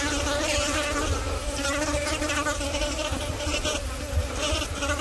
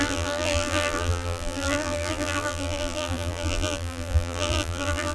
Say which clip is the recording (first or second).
first